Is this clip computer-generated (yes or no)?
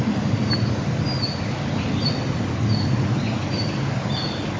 no